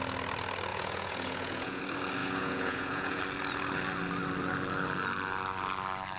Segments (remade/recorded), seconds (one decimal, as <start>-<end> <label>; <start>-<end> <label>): 0.0-0.7 recorded; 0.7-1.8 remade; 1.8-2.2 recorded; 2.2-3.2 remade; 3.2-6.2 recorded

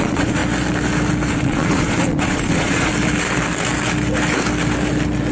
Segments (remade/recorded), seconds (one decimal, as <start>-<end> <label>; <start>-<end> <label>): 0.0-0.4 remade; 0.4-1.3 recorded; 1.3-2.9 remade; 2.9-5.3 recorded

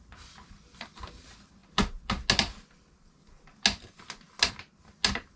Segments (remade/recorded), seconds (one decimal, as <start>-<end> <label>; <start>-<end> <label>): 0.0-5.4 recorded

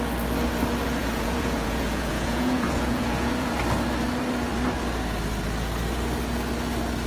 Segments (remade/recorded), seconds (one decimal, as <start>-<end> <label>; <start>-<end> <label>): 0.0-1.0 recorded; 1.0-3.5 remade; 3.5-7.1 recorded

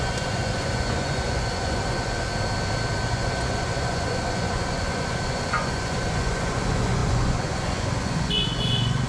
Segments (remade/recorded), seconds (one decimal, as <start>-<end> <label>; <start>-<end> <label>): 0.0-2.3 remade; 2.3-3.1 recorded; 3.1-9.1 remade

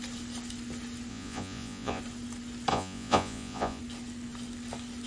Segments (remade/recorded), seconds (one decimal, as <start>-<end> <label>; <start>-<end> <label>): 0.0-1.1 recorded; 1.1-2.0 remade; 2.0-2.7 recorded; 2.7-3.8 remade; 3.8-5.1 recorded

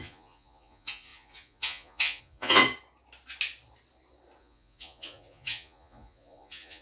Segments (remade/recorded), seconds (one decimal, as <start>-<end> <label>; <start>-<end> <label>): 0.0-2.6 remade; 2.6-4.4 recorded; 4.4-6.8 remade

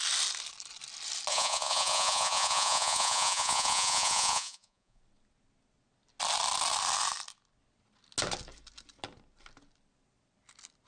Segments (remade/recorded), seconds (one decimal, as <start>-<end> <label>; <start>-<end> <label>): 0.0-1.3 recorded; 1.3-5.0 remade; 5.0-10.9 recorded